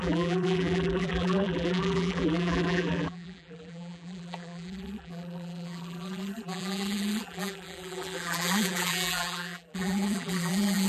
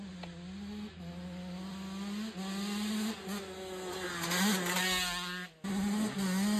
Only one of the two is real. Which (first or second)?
second